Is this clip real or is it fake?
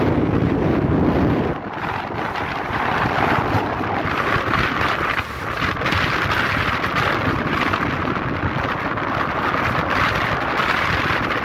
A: real